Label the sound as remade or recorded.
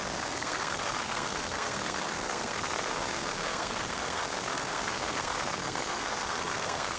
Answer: remade